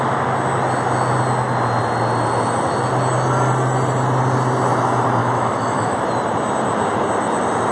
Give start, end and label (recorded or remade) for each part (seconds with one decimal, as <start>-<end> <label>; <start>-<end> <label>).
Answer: 0.0-5.2 recorded; 5.2-6.0 remade; 6.0-7.7 recorded